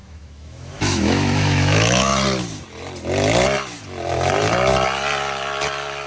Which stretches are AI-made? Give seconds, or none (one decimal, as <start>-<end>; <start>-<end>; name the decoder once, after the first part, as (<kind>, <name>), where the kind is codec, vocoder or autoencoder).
0.0-2.1 (autoencoder, DAC-VAE)

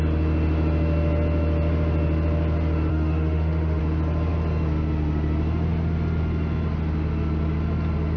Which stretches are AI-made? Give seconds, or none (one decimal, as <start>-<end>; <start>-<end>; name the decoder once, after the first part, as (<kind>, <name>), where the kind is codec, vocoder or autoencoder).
2.9-3.8 (autoencoder, DAC-VAE)

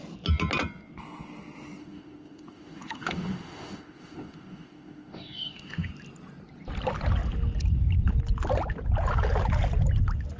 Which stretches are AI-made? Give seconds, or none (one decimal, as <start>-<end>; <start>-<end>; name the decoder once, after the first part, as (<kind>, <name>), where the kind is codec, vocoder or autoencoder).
1.8-5.9 (autoencoder, DAC-VAE)

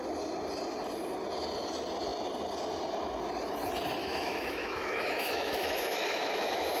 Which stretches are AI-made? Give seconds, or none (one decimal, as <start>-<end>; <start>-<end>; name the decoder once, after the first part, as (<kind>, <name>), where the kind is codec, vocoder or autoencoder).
4.0-6.8 (autoencoder, DAC-VAE)